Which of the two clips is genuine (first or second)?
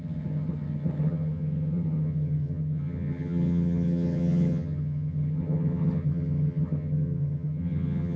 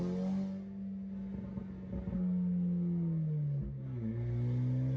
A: second